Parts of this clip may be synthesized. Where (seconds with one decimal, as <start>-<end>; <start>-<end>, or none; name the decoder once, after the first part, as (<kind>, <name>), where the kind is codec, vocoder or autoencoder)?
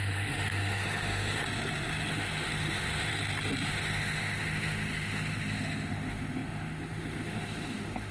0.0-1.4 (autoencoder, DAC-VAE); 2.1-3.1; 3.7-8.1